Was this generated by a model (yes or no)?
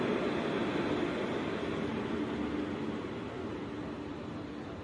no